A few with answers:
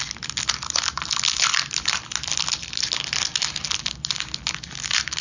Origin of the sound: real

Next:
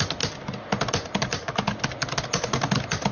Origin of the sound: real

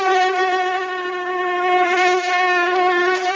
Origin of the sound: real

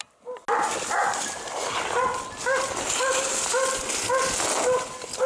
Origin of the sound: real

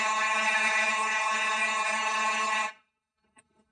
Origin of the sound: fake